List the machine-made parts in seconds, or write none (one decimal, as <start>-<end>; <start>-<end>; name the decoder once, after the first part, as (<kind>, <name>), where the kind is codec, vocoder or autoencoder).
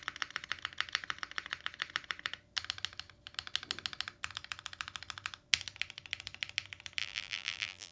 7.0-7.9 (vocoder, BigVGAN v2)